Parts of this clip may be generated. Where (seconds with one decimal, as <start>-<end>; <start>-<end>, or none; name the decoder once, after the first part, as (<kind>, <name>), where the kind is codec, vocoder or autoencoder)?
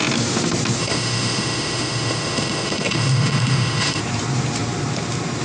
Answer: 0.8-4.0 (autoencoder, DAC-VAE)